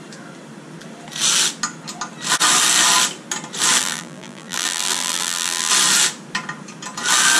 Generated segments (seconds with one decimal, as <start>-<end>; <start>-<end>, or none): 3.8-5.7